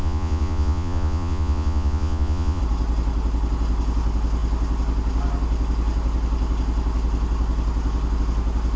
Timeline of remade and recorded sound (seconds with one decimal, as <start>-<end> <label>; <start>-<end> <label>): 0.0-2.6 remade; 2.6-8.8 recorded